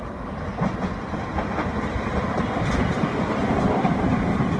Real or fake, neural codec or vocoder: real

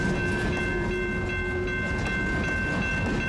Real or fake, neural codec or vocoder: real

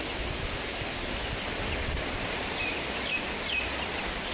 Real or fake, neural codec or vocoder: real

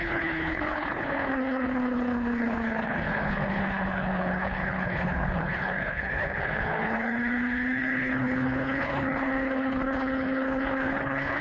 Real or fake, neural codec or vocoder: fake, codec, HILCodec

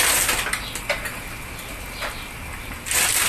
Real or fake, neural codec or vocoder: real